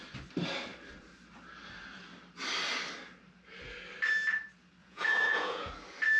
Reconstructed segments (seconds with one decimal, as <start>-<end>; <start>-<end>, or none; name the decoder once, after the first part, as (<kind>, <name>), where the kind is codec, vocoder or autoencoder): 4.8-5.7 (vocoder, Vocos)